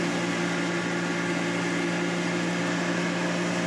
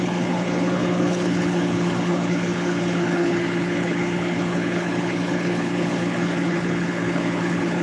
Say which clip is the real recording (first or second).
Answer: first